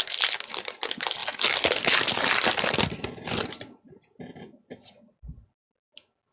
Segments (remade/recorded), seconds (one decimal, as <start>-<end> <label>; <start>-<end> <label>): 0.0-6.3 recorded